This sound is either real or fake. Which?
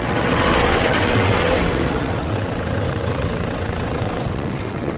fake